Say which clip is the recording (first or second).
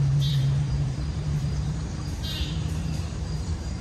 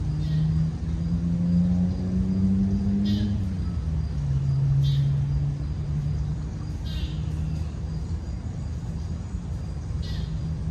second